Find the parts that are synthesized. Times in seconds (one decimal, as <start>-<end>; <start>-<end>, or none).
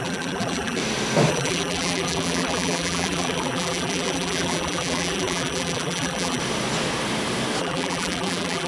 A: 0.0-0.8; 1.3-6.4; 7.6-8.7